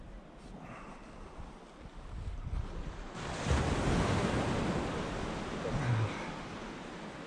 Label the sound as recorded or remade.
recorded